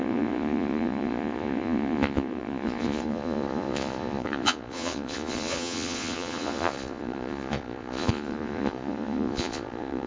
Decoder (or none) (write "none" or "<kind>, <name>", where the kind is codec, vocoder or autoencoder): vocoder, Vocos